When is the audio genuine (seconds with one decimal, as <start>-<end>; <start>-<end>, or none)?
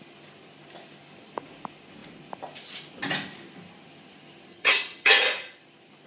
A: 0.0-4.5; 5.2-6.1